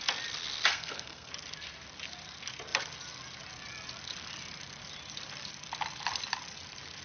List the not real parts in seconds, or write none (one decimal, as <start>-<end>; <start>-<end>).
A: 0.7-1.3

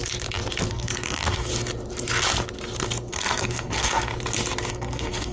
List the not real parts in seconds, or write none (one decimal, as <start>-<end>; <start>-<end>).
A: 0.7-1.5; 3.1-4.1; 4.7-5.3

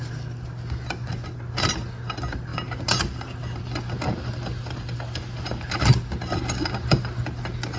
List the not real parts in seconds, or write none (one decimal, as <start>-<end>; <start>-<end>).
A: none

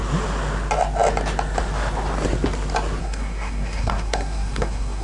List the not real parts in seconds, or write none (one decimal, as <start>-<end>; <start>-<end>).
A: 3.0-5.0

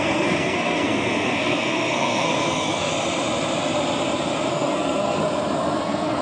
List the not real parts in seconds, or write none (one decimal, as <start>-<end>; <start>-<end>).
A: 0.0-2.9; 4.5-5.2; 5.8-6.2

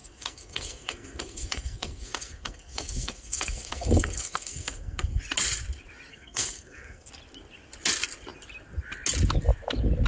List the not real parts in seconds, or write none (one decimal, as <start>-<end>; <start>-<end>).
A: 0.0-5.2; 6.1-7.1